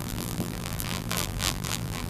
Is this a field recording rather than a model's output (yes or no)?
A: no